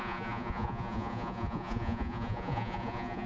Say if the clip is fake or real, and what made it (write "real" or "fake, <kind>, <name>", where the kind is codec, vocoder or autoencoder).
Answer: fake, vocoder, Vocos